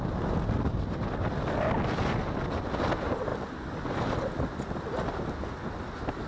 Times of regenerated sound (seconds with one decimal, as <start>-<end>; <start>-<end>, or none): none